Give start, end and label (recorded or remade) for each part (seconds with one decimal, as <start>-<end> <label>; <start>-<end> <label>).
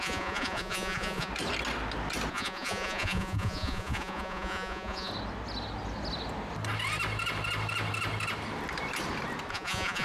0.0-1.3 remade; 1.3-2.3 recorded; 2.3-5.1 remade; 5.1-9.5 recorded; 9.5-10.0 remade